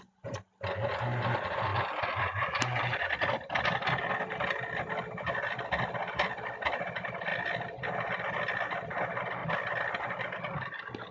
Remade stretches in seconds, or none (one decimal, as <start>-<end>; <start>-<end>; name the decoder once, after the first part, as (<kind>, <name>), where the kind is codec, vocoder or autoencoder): none

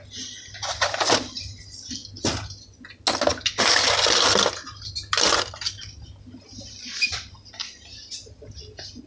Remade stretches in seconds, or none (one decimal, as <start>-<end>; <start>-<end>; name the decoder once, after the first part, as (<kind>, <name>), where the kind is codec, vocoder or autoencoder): none

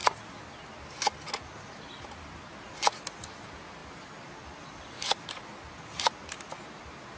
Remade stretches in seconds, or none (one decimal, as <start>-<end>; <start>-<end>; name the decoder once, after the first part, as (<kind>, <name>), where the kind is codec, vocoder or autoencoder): 3.8-5.5 (vocoder, BigVGAN v2)

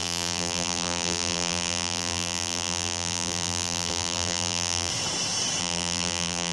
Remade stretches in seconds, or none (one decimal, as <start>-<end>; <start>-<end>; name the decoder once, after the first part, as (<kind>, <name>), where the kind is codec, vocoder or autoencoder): 0.0-4.9 (vocoder, BigVGAN v2); 5.6-6.5

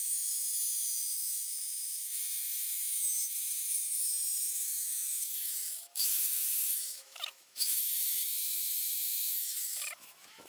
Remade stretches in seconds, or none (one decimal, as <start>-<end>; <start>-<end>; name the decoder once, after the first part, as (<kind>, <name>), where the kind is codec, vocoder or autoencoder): 0.0-10.5 (autoencoder, DAC-VAE)

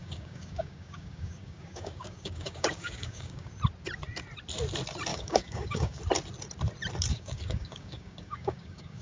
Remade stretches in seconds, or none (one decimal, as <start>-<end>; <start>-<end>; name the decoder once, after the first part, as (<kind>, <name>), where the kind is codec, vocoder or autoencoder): 0.0-3.5 (codec, DAC); 5.1-6.0; 7.1-9.0

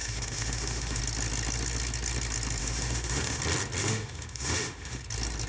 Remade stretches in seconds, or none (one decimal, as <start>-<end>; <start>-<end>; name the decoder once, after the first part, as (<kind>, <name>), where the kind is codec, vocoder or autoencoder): 0.0-1.0 (autoencoder, DAC-VAE); 2.6-3.4; 3.8-5.0

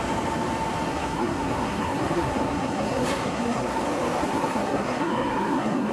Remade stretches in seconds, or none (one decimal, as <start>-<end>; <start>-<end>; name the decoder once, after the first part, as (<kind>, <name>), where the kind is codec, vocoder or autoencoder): 0.9-3.8 (codec, SNAC); 4.2-5.9